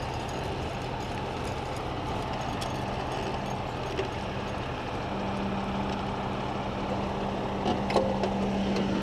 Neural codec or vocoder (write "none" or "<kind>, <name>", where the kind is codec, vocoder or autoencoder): none